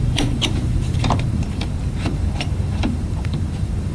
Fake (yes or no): yes